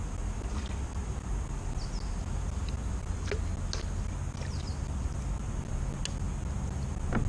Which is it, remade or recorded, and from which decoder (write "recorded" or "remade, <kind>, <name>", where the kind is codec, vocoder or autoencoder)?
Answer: recorded